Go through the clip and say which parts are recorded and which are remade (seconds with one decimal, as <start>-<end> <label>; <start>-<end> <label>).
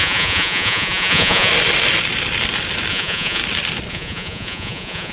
0.0-1.5 remade; 1.5-2.9 recorded; 2.9-3.4 remade; 3.4-3.9 recorded; 3.9-5.1 remade